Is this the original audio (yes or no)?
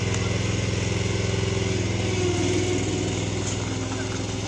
yes